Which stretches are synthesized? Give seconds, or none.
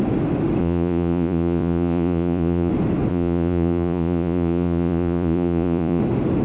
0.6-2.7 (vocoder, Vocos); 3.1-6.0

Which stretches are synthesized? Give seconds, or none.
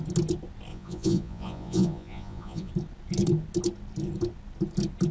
0.7-2.7 (vocoder, Vocos)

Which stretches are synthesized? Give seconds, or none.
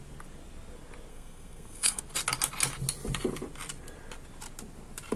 1.1-2.0 (codec, SNAC)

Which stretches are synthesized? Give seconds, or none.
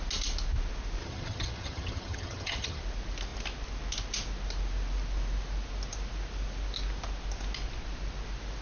1.0-2.8 (vocoder, HiFi-GAN)